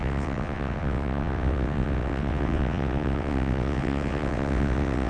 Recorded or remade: remade